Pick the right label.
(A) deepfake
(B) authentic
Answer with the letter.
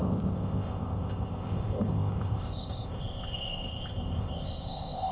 A